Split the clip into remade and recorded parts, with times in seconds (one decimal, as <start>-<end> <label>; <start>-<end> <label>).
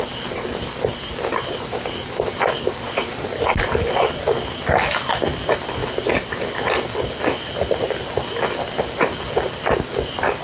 0.0-10.4 recorded